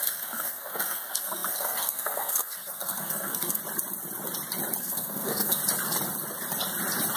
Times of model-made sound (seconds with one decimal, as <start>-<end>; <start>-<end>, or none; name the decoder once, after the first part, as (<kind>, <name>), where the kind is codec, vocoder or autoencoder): 0.0-3.6 (codec, SNAC); 4.8-5.6